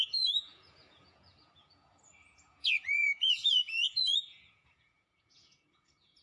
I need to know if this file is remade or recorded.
remade